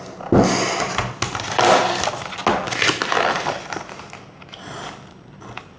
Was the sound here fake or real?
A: real